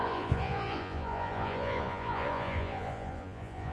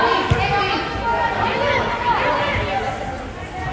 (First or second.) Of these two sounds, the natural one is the second